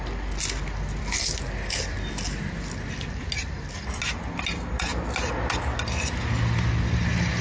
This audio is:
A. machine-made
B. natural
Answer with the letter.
B